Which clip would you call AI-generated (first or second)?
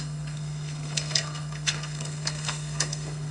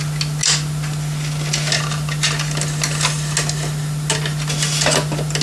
first